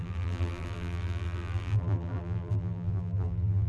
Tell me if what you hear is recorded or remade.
remade